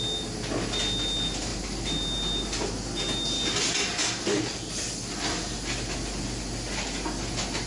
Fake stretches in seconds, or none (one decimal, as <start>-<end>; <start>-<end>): none